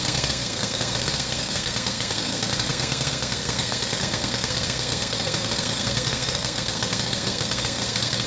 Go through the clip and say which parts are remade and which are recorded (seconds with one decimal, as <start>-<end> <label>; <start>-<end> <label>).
0.0-8.3 remade